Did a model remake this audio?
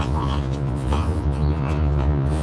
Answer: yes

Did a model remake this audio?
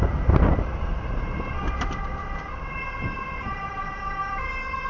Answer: no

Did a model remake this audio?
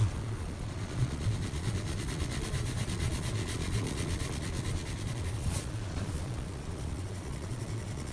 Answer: yes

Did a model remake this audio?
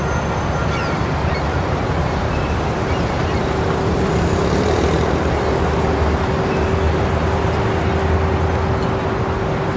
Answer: no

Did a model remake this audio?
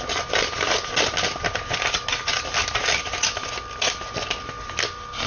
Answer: no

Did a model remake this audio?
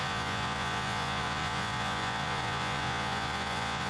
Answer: yes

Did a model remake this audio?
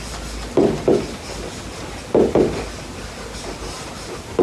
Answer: no